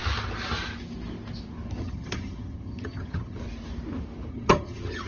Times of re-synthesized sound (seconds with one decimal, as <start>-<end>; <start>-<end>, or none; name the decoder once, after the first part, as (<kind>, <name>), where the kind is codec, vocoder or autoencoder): 1.8-3.4 (vocoder, HiFi-GAN); 4.3-5.1